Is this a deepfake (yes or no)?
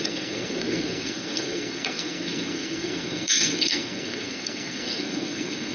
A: yes